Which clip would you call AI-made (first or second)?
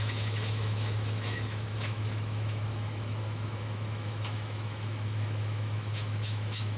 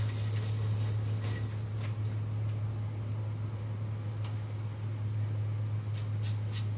first